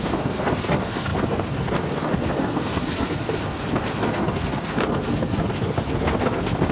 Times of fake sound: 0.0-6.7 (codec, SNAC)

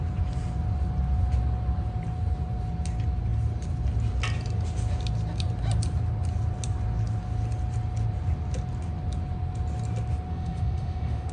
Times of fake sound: 10.3-11.3 (autoencoder, DAC-VAE)